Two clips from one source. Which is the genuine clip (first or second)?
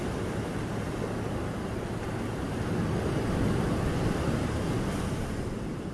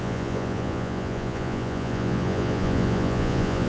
first